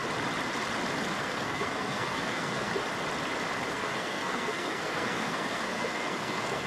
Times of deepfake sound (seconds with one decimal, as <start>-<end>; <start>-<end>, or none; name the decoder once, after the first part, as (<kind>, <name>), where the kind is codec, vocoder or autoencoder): 1.2-2.7 (codec, SNAC); 3.7-6.7